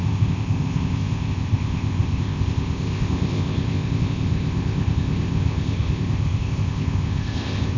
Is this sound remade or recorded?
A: remade